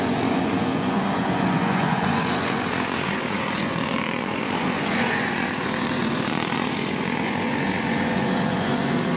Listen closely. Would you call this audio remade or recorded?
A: remade